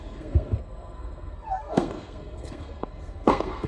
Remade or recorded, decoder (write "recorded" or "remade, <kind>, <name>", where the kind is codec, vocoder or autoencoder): remade, codec, SNAC